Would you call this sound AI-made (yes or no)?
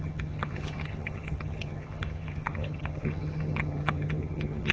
yes